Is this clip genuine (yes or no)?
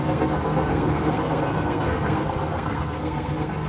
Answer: no